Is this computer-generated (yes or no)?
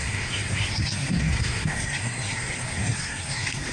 yes